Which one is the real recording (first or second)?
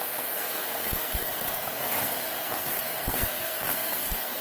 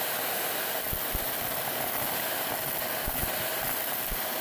second